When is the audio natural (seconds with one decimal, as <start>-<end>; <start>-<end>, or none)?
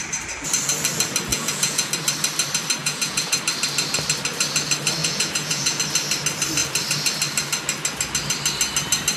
0.0-1.3; 1.9-2.8; 3.4-5.0; 5.8-9.2